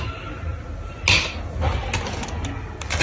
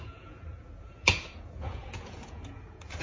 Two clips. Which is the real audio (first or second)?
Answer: first